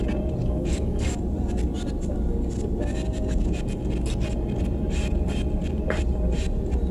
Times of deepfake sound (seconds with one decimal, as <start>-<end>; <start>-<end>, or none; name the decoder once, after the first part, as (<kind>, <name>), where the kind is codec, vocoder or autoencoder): 0.4-1.1 (codec, DAC)